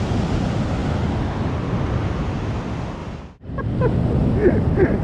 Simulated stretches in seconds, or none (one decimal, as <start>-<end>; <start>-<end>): 3.0-3.6; 4.2-5.0